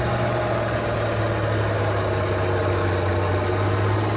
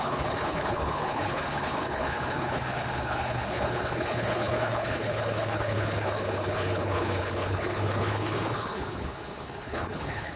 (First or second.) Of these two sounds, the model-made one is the second